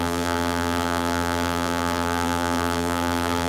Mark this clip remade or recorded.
remade